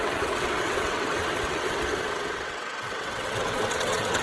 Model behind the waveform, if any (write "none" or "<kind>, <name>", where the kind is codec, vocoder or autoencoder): vocoder, WaveNeXt